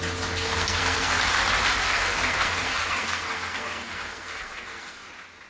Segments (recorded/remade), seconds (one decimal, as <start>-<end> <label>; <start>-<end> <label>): 0.0-0.5 recorded; 0.5-1.2 remade; 1.2-1.8 recorded; 1.8-5.1 remade; 5.1-5.5 recorded